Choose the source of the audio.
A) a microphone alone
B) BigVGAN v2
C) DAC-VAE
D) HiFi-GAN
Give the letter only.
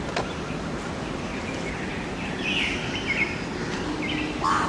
A